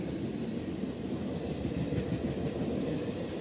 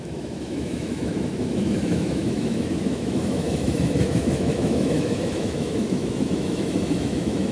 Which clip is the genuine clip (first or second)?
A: first